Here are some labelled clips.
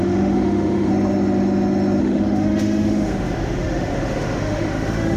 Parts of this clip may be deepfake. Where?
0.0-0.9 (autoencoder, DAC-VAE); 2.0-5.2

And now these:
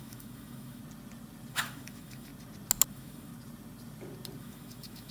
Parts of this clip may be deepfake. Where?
0.0-0.8 (autoencoder, DAC-VAE); 1.5-2.3; 2.9-3.3; 4.4-5.1

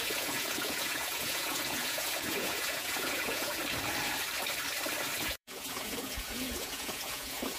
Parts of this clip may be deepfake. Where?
0.0-3.6 (vocoder, Vocos); 5.2-7.6